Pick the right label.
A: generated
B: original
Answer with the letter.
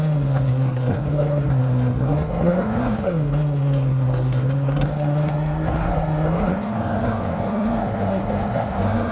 A